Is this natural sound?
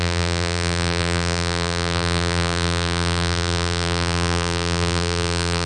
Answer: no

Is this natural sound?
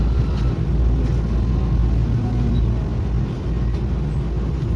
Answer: yes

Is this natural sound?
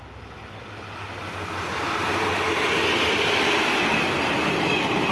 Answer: yes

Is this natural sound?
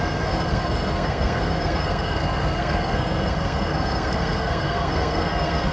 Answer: no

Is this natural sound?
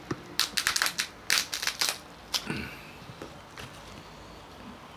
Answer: yes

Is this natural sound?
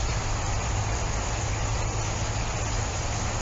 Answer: yes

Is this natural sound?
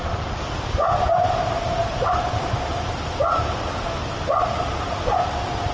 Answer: yes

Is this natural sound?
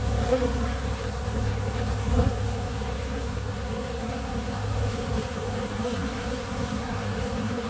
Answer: no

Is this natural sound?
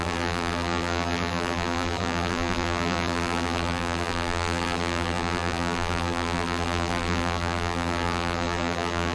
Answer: no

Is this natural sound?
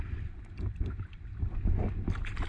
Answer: yes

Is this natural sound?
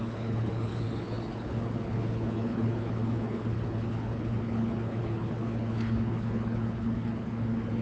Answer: no